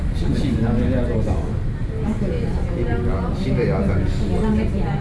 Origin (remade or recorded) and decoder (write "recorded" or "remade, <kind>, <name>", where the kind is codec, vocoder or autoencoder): recorded